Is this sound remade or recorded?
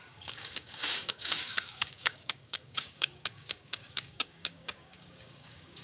remade